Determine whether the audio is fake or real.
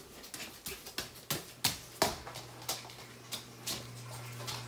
real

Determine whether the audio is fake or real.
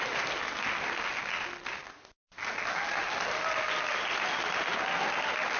real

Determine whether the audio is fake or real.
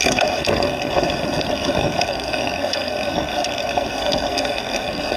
fake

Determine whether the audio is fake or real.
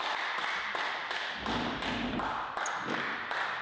fake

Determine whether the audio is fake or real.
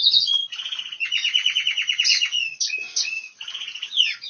fake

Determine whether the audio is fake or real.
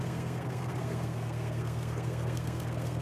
fake